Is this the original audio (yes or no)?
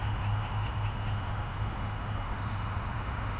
no